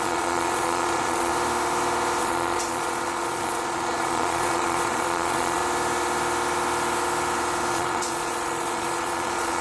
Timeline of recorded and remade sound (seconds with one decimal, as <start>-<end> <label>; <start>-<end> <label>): 0.0-1.3 remade; 1.3-2.2 recorded; 2.2-5.6 remade; 5.6-7.7 recorded; 7.7-9.6 remade